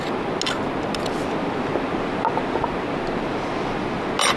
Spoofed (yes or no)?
no